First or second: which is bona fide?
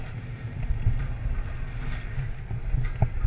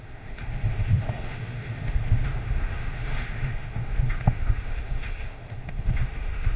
first